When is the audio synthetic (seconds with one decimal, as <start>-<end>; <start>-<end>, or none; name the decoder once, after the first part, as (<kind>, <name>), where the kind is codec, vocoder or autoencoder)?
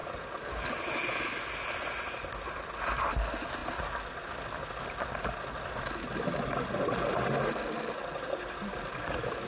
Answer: none